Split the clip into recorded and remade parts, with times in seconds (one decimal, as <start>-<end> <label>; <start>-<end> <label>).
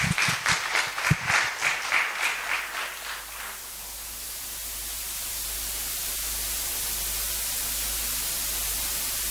0.0-9.3 recorded